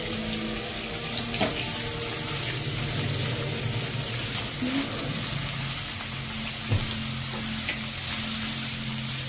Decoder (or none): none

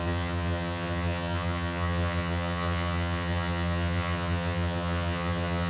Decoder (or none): vocoder, HiFi-GAN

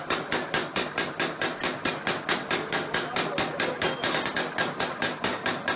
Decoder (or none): none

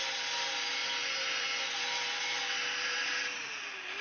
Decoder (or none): none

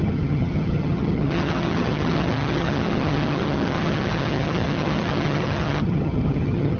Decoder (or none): vocoder, HiFi-GAN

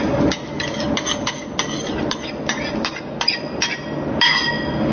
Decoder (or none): none